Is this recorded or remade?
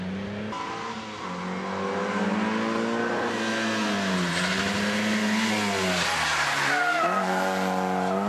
recorded